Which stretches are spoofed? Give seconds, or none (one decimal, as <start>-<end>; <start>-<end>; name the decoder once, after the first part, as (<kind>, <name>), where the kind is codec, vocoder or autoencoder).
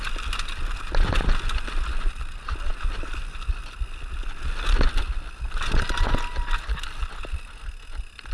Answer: none